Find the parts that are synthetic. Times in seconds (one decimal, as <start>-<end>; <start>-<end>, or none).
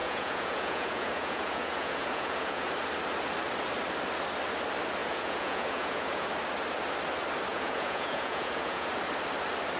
0.0-2.6; 5.0-6.3; 7.5-8.9